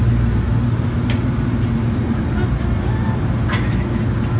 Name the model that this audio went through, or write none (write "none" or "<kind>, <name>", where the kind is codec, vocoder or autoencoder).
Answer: none